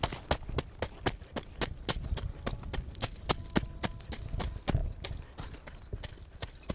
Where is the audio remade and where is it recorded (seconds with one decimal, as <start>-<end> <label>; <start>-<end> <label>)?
0.0-6.7 recorded